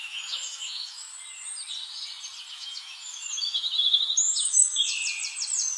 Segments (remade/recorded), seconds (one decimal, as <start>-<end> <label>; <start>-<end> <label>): 0.0-1.1 remade; 1.1-2.5 recorded; 2.5-4.9 remade; 4.9-5.8 recorded